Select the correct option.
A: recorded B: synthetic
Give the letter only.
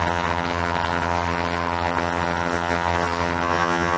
B